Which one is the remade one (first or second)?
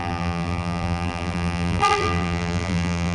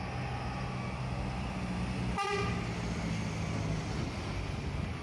first